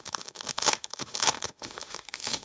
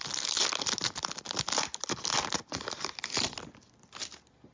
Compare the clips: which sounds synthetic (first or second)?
first